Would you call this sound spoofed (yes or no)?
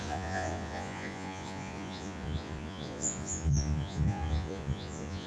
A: yes